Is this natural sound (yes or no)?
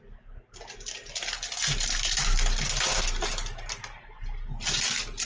yes